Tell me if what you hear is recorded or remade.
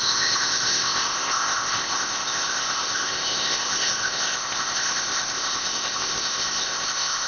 remade